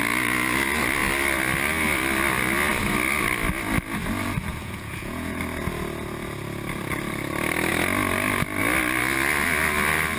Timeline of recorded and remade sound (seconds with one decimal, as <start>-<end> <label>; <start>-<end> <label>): 0.0-4.5 recorded; 4.5-5.4 remade; 5.4-10.2 recorded